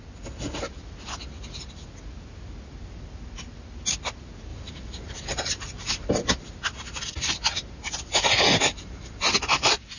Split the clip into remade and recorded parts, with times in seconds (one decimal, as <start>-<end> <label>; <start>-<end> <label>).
0.0-4.5 recorded; 4.5-6.1 remade; 6.1-8.7 recorded; 8.7-9.3 remade; 9.3-10.0 recorded